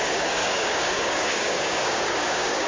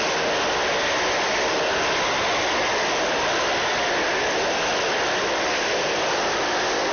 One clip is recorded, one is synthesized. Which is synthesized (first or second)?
first